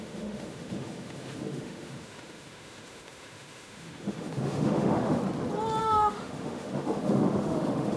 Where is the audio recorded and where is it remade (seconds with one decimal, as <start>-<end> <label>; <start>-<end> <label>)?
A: 0.0-5.2 remade; 5.2-5.8 recorded; 5.8-8.0 remade